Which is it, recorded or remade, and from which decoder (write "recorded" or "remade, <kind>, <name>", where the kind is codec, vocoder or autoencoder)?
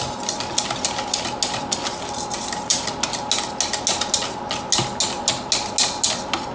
recorded